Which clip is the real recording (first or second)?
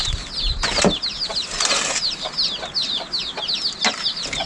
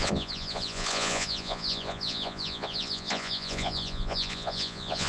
first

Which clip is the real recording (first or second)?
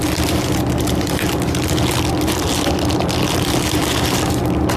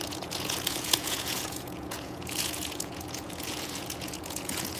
first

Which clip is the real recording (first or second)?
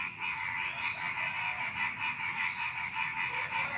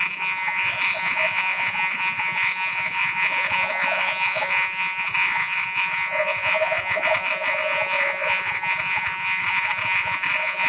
first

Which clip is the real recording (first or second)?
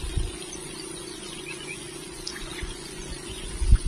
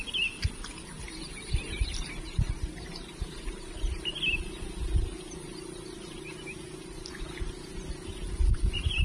second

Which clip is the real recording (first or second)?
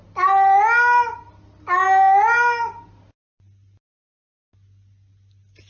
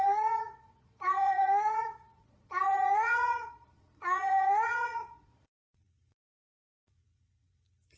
first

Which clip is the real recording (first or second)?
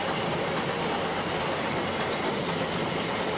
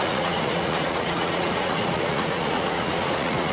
first